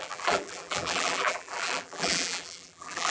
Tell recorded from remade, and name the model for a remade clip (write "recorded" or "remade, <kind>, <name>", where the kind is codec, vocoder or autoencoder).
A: remade, vocoder, BigVGAN v2